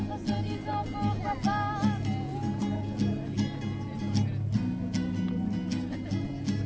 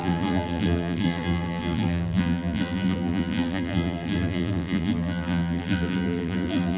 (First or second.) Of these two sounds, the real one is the first